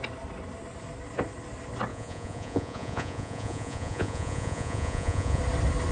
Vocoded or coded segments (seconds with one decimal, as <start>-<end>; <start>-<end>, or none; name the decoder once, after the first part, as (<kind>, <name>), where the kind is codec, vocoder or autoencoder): 1.9-5.4 (vocoder, Vocos)